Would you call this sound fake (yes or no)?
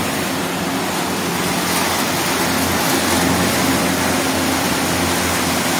no